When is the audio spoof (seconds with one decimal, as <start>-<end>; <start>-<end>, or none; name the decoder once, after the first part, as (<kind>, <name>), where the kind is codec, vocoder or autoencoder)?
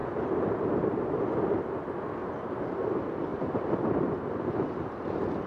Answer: none